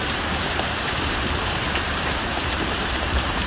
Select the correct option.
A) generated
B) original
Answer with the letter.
A